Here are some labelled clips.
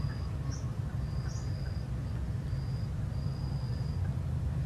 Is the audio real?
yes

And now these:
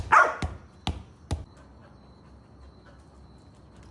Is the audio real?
yes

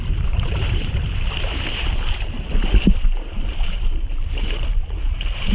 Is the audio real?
no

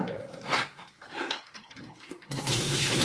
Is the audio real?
no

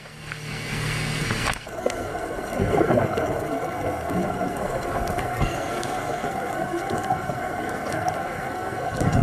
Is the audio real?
no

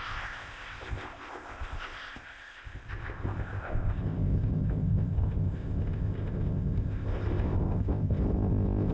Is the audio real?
no